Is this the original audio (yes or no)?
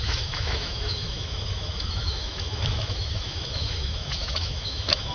no